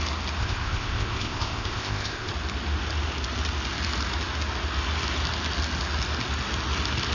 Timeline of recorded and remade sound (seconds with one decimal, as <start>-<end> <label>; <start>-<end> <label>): 0.0-0.4 recorded; 0.4-2.3 remade; 2.3-7.1 recorded